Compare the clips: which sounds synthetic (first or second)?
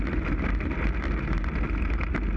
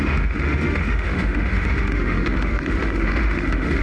second